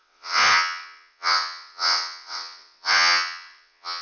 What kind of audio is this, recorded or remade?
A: remade